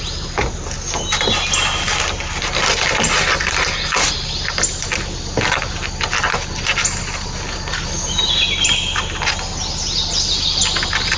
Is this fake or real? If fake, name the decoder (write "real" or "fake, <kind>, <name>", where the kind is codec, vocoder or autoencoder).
real